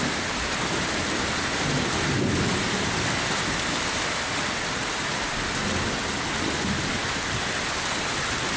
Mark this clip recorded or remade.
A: recorded